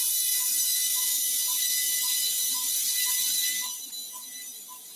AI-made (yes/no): no